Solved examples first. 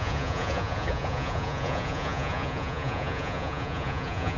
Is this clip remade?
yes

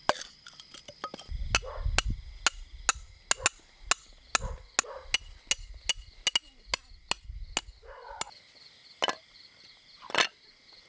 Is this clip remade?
no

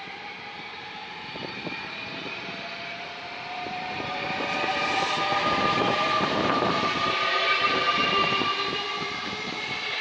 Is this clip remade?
yes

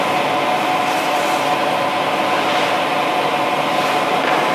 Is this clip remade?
no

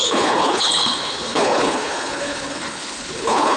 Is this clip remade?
yes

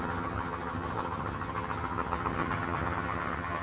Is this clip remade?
yes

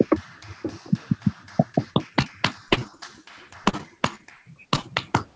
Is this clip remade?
no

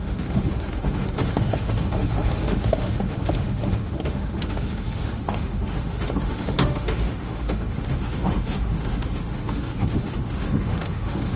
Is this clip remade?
yes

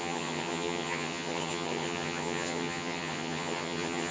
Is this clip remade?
yes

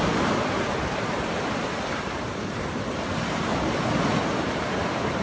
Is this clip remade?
yes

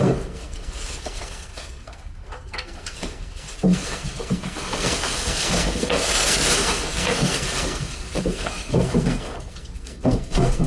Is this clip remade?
yes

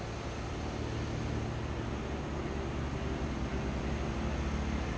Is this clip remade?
no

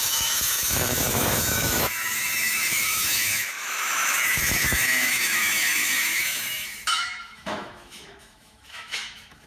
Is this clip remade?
yes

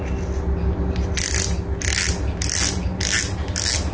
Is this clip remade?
no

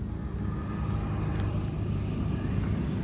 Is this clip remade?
no